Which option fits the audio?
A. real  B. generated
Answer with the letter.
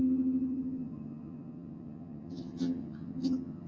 B